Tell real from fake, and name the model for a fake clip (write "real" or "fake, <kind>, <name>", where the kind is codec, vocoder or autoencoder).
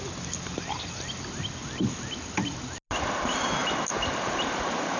real